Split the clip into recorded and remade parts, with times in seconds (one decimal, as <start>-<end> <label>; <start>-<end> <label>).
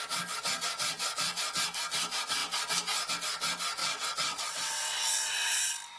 0.0-3.8 recorded; 3.8-5.6 remade; 5.6-6.0 recorded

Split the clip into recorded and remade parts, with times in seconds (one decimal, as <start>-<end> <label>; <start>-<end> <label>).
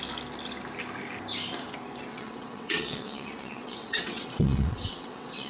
0.0-2.1 recorded; 2.1-5.5 remade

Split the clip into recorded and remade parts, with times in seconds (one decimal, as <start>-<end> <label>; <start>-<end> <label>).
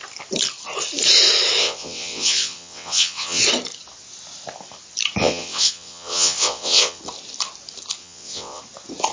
0.0-1.6 recorded; 1.6-3.4 remade; 3.4-5.2 recorded; 5.2-7.0 remade; 7.0-8.0 recorded; 8.0-8.6 remade; 8.6-9.1 recorded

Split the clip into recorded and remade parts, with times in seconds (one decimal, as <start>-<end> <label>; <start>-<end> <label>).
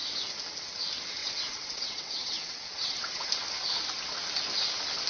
0.0-1.2 recorded; 1.2-3.3 remade; 3.3-5.1 recorded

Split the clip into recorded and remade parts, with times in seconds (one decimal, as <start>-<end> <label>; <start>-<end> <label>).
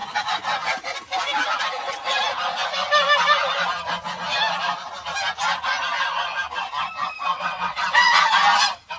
0.0-7.3 recorded; 7.3-8.3 remade; 8.3-9.0 recorded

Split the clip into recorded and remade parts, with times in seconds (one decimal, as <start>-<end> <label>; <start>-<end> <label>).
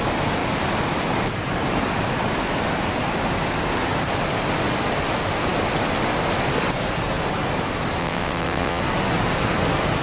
0.0-8.0 recorded; 8.0-8.8 remade; 8.8-10.0 recorded